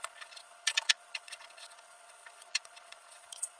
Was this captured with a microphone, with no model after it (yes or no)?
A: no